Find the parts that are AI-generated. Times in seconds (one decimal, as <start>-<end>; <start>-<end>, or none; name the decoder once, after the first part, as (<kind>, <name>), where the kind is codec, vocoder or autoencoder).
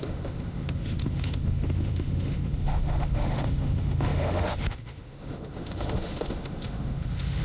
0.0-7.4 (autoencoder, DAC-VAE)